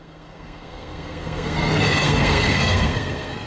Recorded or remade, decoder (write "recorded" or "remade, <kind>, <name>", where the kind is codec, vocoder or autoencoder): remade, codec, SNAC